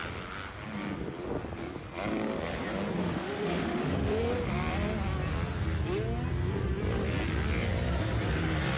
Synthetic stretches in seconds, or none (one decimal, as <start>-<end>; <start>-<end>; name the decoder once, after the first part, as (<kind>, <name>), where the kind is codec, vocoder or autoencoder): 3.0-4.3 (autoencoder, DAC-VAE)